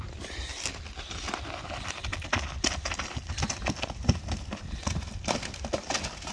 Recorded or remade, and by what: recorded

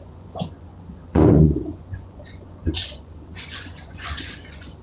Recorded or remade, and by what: remade, vocoder, Vocos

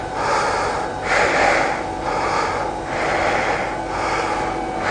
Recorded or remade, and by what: recorded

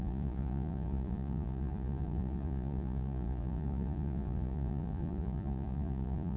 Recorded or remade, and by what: remade, vocoder, Vocos